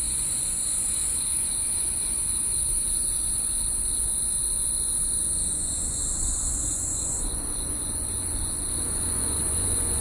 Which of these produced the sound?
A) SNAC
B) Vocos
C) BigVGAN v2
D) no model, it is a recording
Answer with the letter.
B